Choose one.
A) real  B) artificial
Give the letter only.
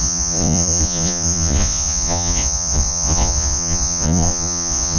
B